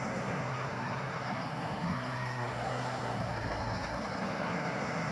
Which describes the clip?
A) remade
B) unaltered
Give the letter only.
A